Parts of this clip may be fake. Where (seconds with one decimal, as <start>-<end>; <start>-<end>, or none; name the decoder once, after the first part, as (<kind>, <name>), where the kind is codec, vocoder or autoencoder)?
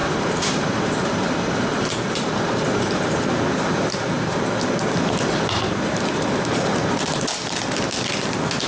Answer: 0.0-3.4 (vocoder, BigVGAN v2)